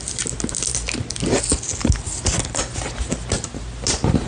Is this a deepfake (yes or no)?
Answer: no